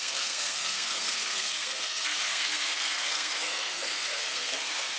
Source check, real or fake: fake